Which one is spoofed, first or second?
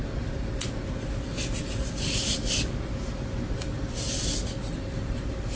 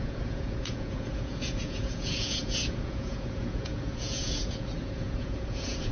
second